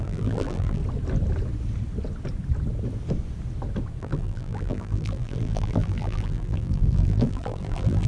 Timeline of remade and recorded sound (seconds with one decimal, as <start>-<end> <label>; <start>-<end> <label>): 0.0-0.8 remade; 0.8-4.0 recorded; 4.0-8.1 remade